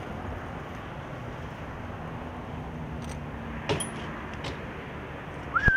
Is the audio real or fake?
real